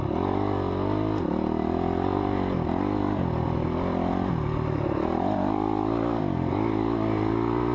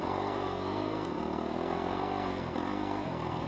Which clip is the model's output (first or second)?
second